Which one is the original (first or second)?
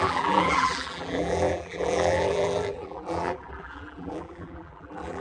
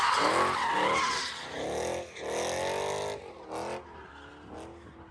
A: second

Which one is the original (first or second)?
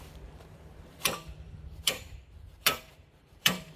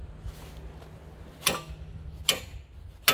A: second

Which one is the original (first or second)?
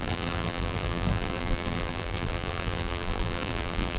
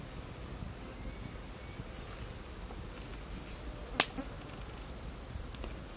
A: second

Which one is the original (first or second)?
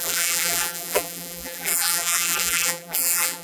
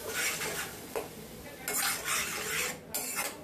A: second